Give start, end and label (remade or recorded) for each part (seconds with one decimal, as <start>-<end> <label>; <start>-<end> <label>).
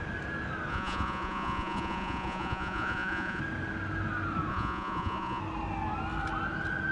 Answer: 0.0-0.7 recorded; 0.7-3.4 remade; 3.4-4.5 recorded; 4.5-5.4 remade; 5.4-6.9 recorded